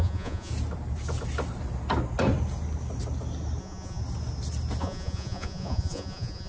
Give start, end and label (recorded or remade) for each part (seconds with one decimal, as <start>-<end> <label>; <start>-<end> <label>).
0.0-0.5 remade; 0.5-3.6 recorded; 3.6-4.0 remade; 4.0-4.8 recorded; 4.8-6.5 remade